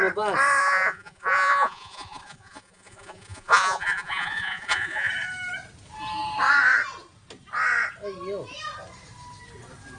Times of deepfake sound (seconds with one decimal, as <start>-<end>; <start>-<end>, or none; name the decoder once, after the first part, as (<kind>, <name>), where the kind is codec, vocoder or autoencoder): 0.6-5.1 (vocoder, Vocos)